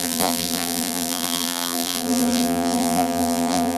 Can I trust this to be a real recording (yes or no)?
no